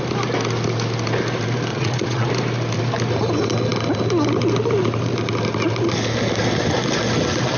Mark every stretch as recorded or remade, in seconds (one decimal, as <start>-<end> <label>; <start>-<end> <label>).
0.0-1.7 recorded; 1.7-2.3 remade; 2.3-7.6 recorded